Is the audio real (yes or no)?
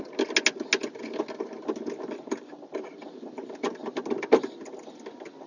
yes